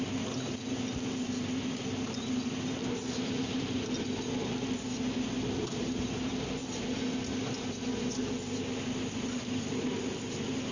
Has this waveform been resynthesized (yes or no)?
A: no